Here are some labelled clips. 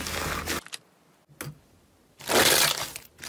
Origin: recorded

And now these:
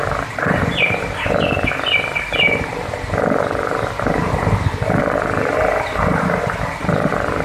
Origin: recorded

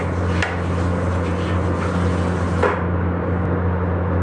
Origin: recorded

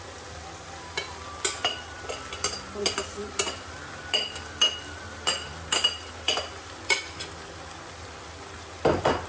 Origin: recorded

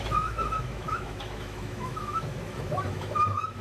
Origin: remade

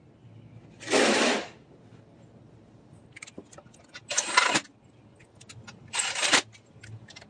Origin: recorded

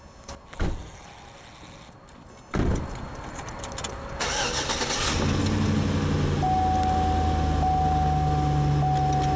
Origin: recorded